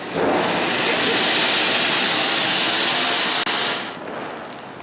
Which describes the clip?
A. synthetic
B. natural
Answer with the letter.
B